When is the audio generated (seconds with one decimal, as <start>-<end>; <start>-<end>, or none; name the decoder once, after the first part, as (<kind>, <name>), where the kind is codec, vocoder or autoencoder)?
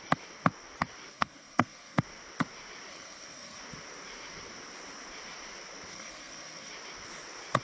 1.1-2.0 (codec, SNAC); 2.9-3.6; 5.9-6.7